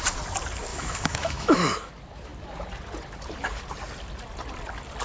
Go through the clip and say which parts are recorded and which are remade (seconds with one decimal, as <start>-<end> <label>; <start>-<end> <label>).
0.0-0.7 recorded; 0.7-1.9 remade; 1.9-5.0 recorded